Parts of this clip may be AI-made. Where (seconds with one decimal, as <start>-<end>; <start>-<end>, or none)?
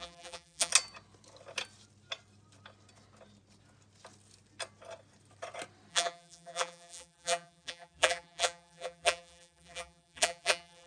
0.0-0.7; 5.9-10.9